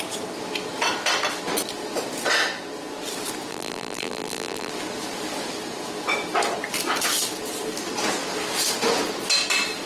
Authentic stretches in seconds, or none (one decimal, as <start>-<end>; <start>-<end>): 0.0-3.5; 4.7-9.9